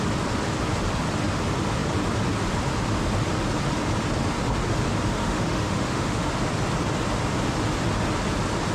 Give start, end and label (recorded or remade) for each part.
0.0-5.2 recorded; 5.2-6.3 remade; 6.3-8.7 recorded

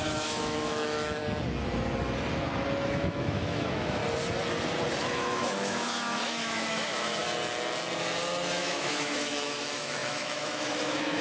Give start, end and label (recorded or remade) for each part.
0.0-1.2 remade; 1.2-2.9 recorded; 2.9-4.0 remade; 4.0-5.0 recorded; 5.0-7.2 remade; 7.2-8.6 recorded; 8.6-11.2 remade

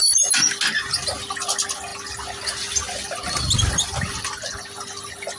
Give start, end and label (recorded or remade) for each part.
0.0-5.4 recorded